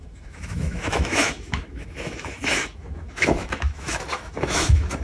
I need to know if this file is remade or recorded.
remade